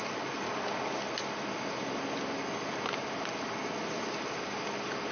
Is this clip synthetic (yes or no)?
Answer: no